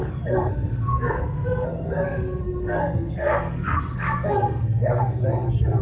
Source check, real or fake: fake